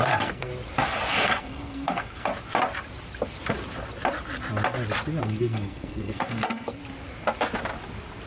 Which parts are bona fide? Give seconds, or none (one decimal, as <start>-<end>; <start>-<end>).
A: 0.5-1.1; 2.3-5.2; 6.8-8.3